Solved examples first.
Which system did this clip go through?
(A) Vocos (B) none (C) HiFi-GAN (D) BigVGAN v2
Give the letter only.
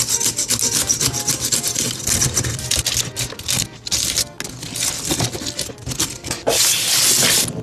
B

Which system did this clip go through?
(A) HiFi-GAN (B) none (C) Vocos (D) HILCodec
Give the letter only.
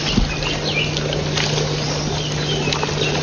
B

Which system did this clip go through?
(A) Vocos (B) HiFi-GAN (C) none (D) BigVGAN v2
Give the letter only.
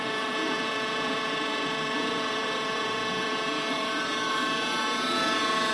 A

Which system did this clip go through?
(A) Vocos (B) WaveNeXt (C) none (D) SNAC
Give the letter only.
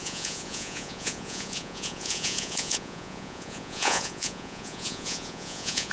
A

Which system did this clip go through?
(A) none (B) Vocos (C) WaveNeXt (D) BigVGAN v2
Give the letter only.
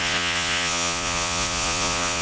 B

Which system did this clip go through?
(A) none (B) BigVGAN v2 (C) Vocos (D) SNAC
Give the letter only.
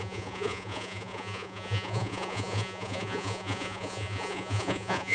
C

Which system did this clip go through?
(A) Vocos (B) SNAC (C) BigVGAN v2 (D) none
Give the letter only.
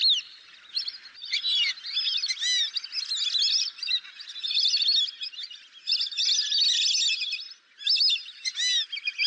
D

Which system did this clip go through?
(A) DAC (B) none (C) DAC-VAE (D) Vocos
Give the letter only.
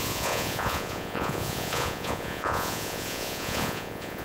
D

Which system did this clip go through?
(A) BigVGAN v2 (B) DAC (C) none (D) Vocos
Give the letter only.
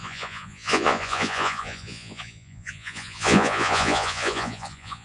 D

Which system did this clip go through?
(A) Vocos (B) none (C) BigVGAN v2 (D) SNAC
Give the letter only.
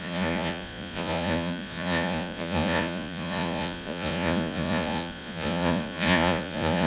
A